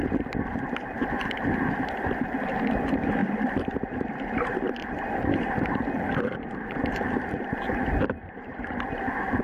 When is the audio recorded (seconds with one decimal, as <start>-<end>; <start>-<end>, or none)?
0.0-3.2; 7.5-8.2